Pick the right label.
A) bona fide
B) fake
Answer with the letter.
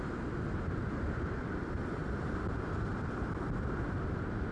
A